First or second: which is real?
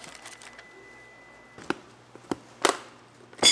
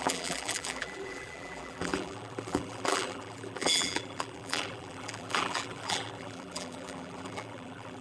first